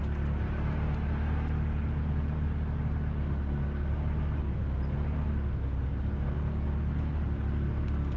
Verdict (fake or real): real